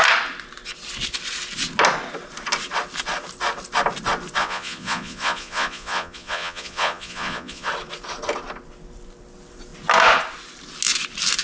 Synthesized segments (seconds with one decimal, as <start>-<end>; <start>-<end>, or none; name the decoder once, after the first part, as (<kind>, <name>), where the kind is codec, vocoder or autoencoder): 4.4-7.7 (vocoder, Vocos)